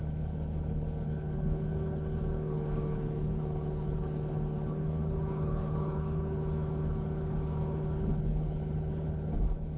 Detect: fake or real fake